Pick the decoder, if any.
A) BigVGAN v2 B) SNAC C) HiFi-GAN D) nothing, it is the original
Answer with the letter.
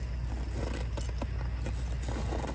D